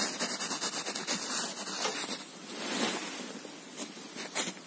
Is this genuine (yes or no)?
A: yes